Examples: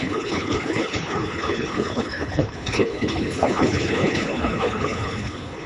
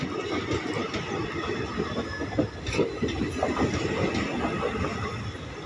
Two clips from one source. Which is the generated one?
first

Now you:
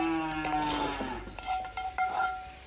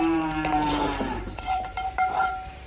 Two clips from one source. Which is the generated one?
second